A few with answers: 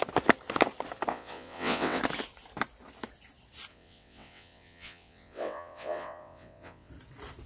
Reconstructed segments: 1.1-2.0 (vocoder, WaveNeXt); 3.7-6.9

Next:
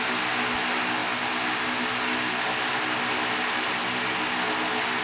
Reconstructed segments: none

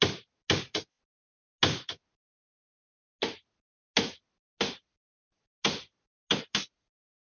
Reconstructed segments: none